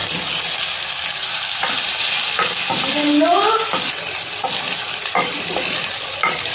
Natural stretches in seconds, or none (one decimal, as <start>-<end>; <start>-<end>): 0.0-6.5